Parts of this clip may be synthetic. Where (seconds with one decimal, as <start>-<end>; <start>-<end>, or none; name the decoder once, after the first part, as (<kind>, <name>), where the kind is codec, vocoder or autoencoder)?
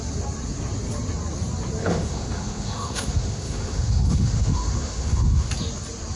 1.8-5.5 (autoencoder, DAC-VAE)